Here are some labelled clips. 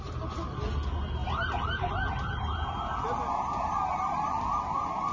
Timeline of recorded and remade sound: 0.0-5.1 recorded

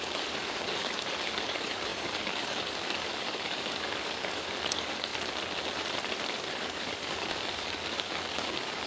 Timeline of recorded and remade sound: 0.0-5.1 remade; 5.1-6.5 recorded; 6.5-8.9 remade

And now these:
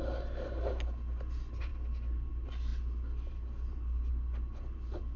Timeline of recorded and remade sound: 0.0-5.2 recorded

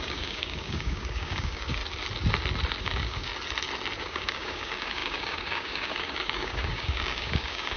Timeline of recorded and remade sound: 0.0-1.8 remade; 1.8-2.8 recorded; 2.8-3.3 remade; 3.3-4.0 recorded; 4.0-7.8 remade

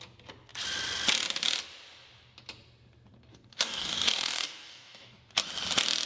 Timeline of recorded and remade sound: 0.0-3.3 recorded; 3.3-5.2 remade; 5.2-6.1 recorded

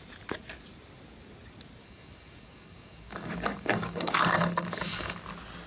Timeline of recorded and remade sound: 0.0-1.8 recorded; 1.8-5.2 remade; 5.2-5.7 recorded

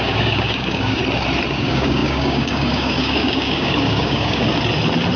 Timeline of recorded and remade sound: 0.0-1.0 remade; 1.0-1.5 recorded; 1.5-4.5 remade; 4.5-5.2 recorded